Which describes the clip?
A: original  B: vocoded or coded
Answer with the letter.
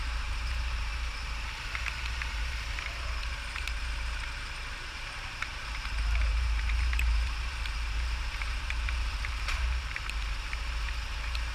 B